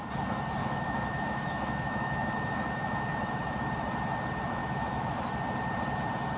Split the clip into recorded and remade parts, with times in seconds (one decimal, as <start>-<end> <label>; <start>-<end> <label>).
0.0-0.6 recorded; 0.6-3.1 remade; 3.1-4.6 recorded; 4.6-5.3 remade; 5.3-6.4 recorded